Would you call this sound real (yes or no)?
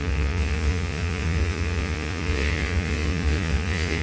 no